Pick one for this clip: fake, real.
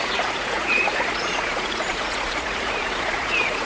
fake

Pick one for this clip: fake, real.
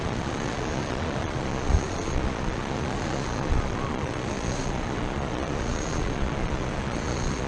fake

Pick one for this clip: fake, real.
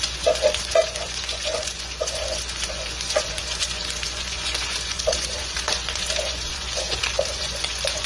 fake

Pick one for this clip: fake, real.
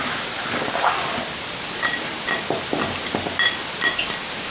real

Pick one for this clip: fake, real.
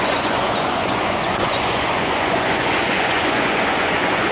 fake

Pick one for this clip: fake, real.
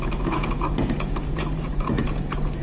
fake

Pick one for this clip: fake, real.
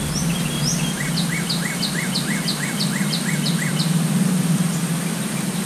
real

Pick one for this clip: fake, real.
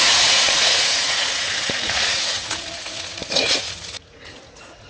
fake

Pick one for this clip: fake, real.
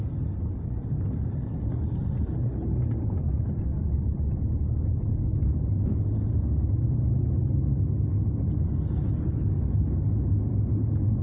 real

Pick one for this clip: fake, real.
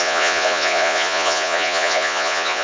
fake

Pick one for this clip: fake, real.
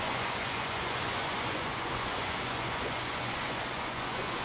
fake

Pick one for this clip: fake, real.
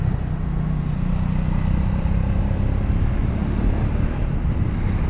real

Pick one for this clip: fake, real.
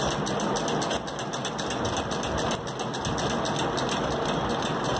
real